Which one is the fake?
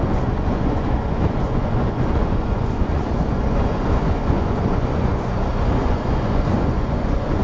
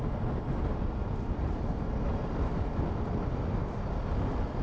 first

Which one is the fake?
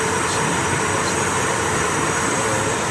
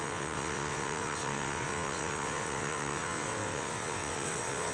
second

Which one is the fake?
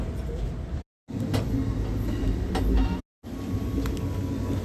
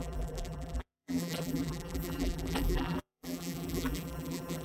second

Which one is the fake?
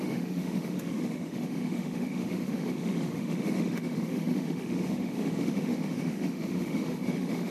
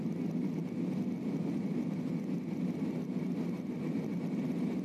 first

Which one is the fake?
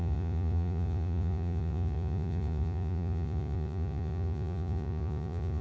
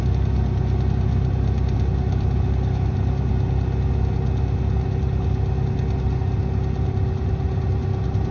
first